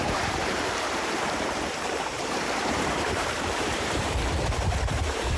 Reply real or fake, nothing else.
fake